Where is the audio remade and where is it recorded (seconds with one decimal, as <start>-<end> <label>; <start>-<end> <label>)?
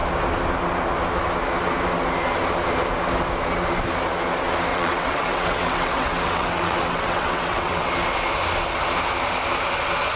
0.0-4.7 recorded; 4.7-7.9 remade; 7.9-10.2 recorded